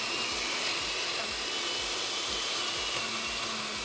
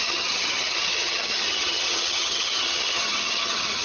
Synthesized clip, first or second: second